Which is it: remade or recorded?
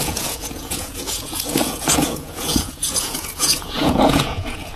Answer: remade